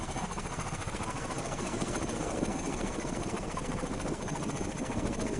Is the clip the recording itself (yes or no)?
no